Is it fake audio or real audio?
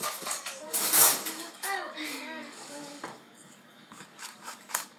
fake